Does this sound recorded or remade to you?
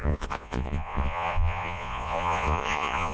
remade